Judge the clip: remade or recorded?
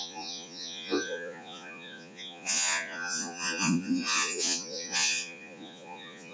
remade